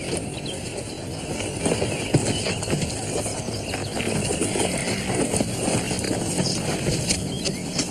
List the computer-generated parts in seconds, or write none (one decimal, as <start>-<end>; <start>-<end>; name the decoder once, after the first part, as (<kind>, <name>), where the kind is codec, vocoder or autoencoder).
none